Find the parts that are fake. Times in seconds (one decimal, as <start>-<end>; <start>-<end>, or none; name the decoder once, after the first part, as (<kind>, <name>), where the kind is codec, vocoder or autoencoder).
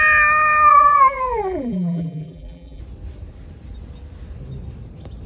0.7-2.8 (vocoder, BigVGAN v2)